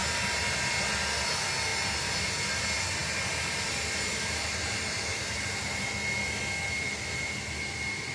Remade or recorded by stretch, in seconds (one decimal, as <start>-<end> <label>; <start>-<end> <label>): 0.0-0.7 remade; 0.7-1.7 recorded; 1.7-2.6 remade; 2.6-3.0 recorded; 3.0-5.9 remade; 5.9-8.1 recorded